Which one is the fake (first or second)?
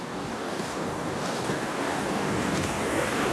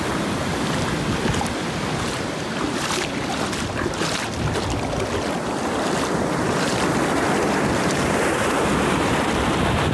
first